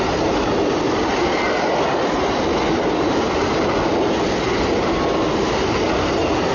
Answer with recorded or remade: recorded